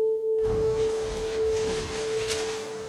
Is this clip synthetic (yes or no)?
yes